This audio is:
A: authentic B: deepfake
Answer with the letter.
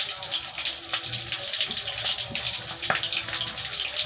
A